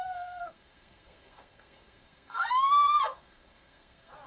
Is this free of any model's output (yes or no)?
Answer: no